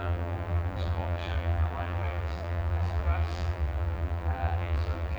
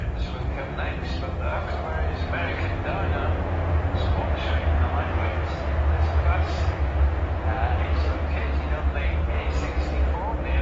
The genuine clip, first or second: second